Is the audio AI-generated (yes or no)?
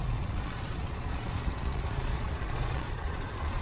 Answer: yes